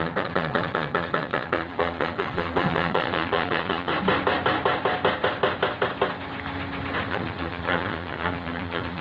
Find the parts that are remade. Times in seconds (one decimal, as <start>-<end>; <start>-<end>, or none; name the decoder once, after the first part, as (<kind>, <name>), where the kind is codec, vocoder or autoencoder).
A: 0.0-3.9 (vocoder, Vocos); 7.1-9.0